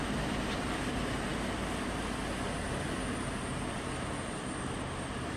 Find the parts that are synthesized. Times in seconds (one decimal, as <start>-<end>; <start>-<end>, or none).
none